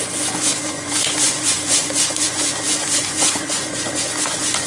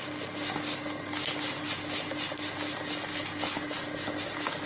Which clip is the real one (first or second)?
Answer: second